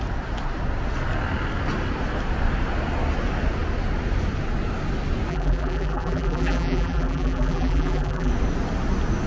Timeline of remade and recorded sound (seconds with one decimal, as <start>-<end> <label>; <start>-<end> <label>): 0.0-5.3 recorded; 5.3-8.3 remade; 8.3-9.3 recorded